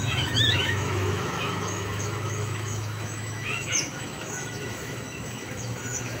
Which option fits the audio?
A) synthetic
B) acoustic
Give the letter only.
A